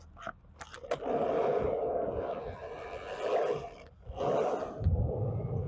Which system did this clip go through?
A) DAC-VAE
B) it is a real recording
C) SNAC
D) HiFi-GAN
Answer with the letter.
B